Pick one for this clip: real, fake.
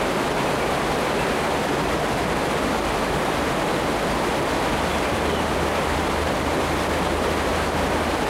real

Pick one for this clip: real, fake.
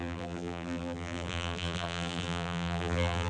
fake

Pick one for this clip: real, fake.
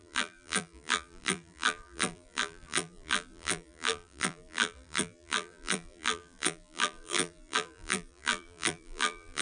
fake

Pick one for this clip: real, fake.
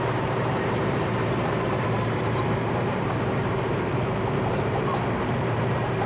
fake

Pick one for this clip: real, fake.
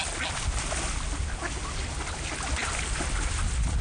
real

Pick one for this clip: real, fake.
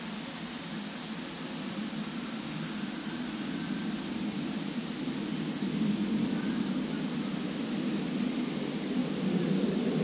real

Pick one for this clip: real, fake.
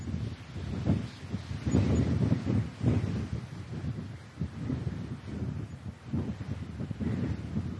real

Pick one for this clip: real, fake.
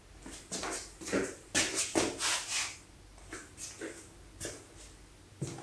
real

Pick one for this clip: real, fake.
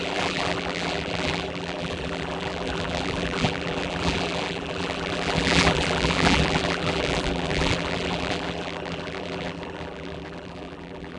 fake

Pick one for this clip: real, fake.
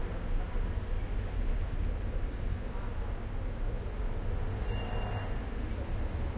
real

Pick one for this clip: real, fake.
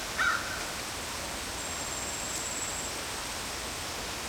real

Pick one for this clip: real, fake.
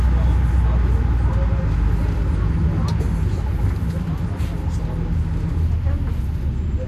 real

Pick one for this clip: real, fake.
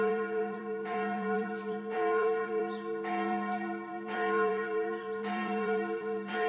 fake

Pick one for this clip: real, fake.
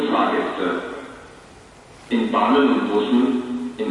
real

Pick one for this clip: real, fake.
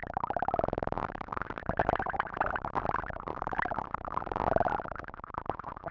fake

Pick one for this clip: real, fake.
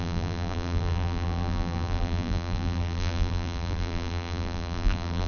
fake